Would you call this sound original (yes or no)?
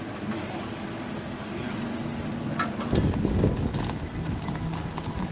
yes